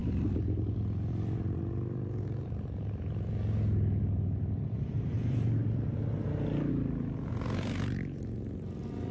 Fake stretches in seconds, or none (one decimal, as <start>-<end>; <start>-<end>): 0.0-1.6; 4.0-6.7